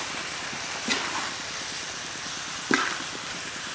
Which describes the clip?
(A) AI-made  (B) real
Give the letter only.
B